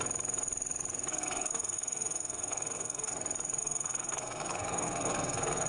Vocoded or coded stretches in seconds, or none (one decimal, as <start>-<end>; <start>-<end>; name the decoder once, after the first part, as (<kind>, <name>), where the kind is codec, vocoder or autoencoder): 1.1-3.1 (codec, SNAC); 3.6-5.7